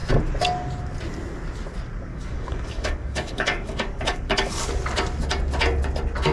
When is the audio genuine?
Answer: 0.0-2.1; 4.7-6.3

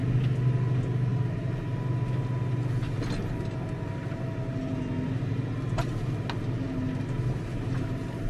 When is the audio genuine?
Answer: 0.0-8.3

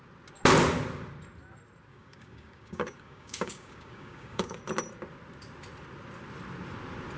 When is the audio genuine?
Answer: 0.0-1.9; 4.6-7.2

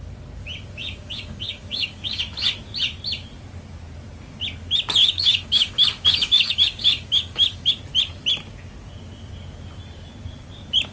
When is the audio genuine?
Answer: 0.0-0.8; 2.2-5.0; 7.7-10.9

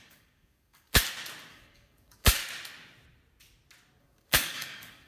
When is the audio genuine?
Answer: 1.0-1.5; 2.4-4.0